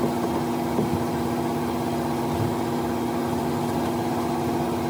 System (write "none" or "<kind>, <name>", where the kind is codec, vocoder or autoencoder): none